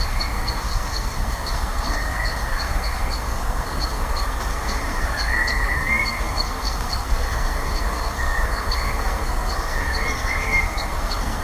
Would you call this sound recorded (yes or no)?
no